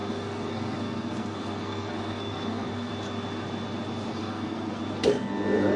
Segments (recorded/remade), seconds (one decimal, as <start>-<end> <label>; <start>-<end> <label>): 0.0-2.9 remade; 2.9-4.1 recorded; 4.1-4.8 remade; 4.8-5.8 recorded